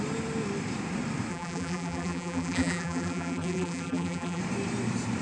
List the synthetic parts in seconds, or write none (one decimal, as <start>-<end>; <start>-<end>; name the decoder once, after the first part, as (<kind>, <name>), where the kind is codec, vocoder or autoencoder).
1.3-4.4 (vocoder, BigVGAN v2)